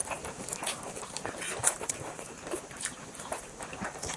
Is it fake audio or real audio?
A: fake